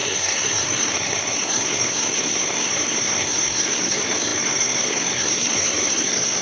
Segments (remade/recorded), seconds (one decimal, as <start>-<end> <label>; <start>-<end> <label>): 0.0-6.4 remade